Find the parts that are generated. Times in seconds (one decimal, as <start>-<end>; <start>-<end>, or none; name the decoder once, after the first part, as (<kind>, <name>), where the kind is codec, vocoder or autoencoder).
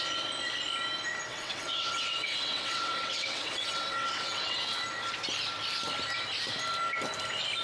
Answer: 1.3-4.6 (vocoder, WaveNeXt)